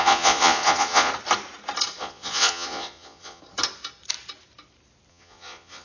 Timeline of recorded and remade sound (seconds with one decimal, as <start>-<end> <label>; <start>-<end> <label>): 0.0-1.1 remade; 1.1-2.0 recorded; 2.0-3.4 remade; 3.4-5.1 recorded; 5.1-5.8 remade